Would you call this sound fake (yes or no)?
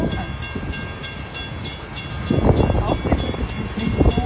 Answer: no